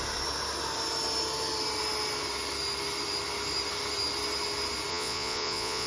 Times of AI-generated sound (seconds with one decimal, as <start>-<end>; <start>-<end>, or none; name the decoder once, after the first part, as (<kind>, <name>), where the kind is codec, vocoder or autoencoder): 4.9-5.9 (vocoder, Vocos)